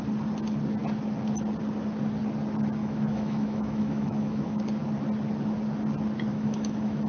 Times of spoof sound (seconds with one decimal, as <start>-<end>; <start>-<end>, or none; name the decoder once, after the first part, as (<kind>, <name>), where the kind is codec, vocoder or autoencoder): 2.8-4.6 (autoencoder, DAC-VAE); 6.3-7.1